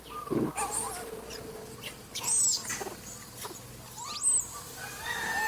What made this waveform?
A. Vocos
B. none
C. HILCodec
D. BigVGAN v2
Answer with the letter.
B